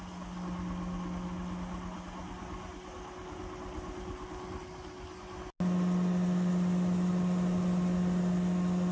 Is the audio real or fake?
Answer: real